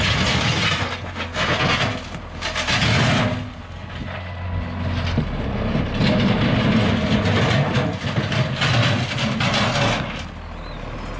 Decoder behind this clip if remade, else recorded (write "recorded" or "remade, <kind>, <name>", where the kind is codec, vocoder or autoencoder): recorded